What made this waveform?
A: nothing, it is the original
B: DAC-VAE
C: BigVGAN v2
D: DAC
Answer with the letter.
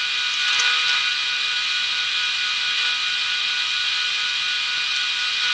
A